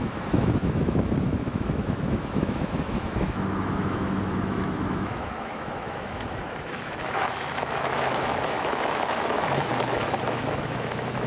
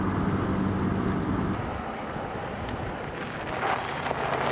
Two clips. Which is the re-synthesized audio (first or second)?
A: first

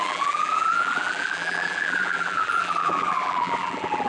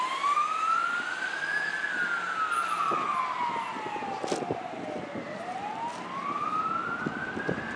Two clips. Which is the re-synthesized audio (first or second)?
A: first